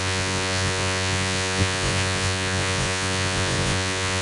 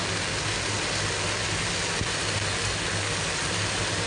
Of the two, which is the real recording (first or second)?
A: second